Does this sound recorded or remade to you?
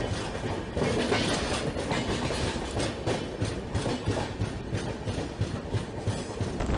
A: recorded